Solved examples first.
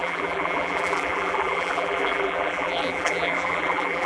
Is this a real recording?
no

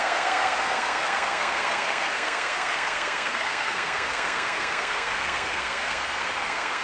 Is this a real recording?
no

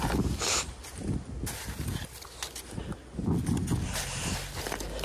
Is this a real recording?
yes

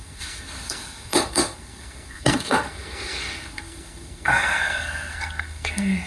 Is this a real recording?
no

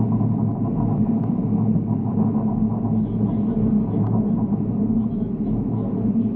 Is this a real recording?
yes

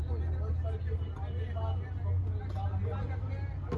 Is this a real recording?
yes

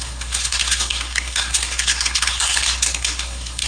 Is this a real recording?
no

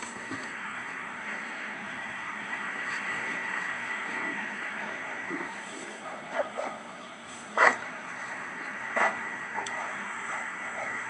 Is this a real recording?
no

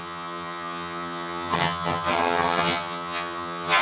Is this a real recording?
no